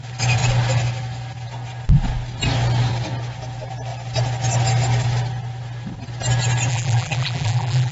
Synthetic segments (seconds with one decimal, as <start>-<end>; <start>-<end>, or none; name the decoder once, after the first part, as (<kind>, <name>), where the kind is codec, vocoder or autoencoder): 6.7-7.9 (vocoder, BigVGAN v2)